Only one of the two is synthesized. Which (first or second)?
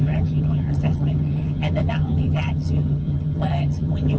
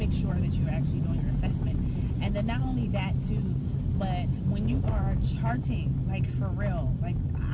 first